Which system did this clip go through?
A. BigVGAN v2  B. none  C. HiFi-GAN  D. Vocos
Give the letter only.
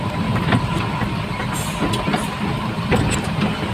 A